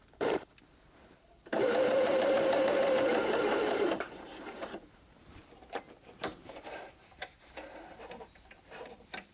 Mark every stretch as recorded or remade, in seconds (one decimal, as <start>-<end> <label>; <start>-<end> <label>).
0.0-5.4 remade; 5.4-6.0 recorded; 6.0-9.3 remade